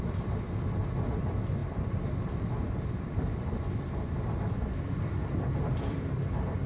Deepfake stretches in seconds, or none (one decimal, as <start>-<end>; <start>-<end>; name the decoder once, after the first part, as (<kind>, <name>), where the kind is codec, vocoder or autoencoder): 0.0-6.7 (vocoder, BigVGAN v2)